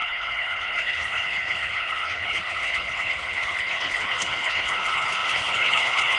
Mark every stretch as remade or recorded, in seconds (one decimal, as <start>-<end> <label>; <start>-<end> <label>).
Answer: 0.0-6.2 remade